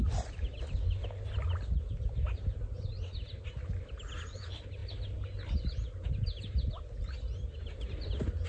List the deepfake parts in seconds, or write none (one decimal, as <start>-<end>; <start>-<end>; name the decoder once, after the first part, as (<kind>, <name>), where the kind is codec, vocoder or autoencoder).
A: none

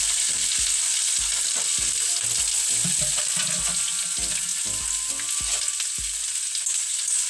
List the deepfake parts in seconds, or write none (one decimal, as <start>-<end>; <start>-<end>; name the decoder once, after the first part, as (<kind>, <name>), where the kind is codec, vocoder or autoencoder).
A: none

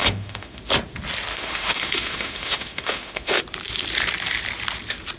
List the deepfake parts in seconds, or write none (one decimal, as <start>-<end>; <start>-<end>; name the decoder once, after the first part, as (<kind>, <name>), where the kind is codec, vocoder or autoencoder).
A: 0.0-0.6 (autoencoder, DAC-VAE); 1.3-3.4